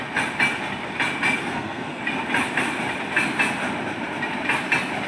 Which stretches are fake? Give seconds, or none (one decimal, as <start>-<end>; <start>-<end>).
1.4-2.0